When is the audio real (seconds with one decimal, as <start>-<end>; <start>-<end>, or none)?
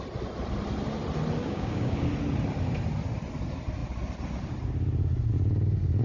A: 0.0-1.4; 2.1-6.0